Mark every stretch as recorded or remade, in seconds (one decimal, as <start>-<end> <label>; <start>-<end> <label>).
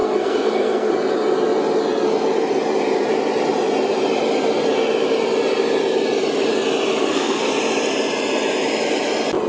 0.0-0.9 remade; 0.9-7.0 recorded; 7.0-7.5 remade; 7.5-9.5 recorded